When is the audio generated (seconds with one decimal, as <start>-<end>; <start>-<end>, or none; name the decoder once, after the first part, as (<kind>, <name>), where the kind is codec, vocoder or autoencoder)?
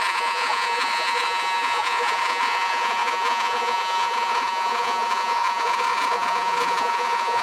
0.0-7.4 (vocoder, Vocos)